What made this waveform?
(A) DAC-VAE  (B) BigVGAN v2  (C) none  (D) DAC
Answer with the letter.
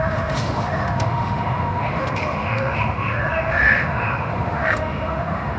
A